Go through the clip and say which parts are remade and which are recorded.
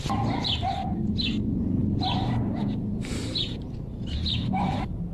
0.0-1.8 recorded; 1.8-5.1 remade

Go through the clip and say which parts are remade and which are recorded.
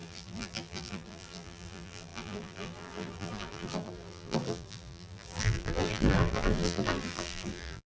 0.0-7.9 remade